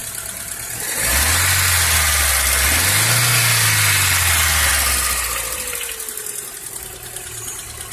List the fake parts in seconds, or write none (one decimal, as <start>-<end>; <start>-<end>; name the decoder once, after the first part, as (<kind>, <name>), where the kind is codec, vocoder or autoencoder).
none